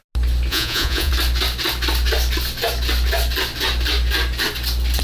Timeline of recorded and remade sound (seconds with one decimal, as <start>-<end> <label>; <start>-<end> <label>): 0.0-0.5 recorded; 0.5-1.1 remade; 1.1-5.0 recorded